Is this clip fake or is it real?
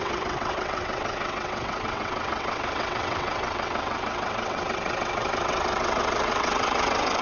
fake